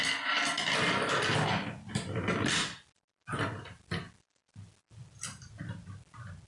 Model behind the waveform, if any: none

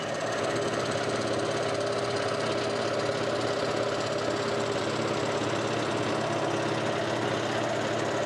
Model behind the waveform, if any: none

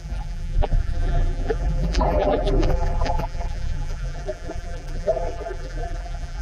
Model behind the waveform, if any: vocoder, BigVGAN v2